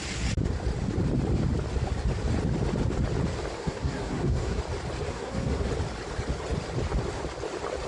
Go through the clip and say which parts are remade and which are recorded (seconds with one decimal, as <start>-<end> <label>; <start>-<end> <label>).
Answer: 0.0-3.6 recorded; 3.6-4.6 remade; 4.6-5.1 recorded; 5.1-5.7 remade; 5.7-7.9 recorded